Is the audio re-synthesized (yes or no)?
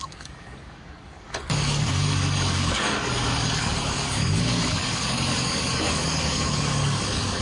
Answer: yes